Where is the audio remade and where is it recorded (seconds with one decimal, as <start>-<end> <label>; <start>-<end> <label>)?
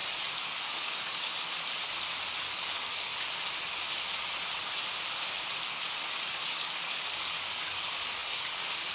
0.0-0.6 recorded; 0.6-1.3 remade; 1.3-2.4 recorded; 2.4-3.1 remade; 3.1-6.5 recorded; 6.5-8.9 remade